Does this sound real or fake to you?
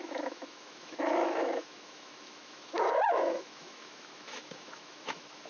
fake